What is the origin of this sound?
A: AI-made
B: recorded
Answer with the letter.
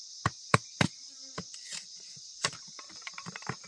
A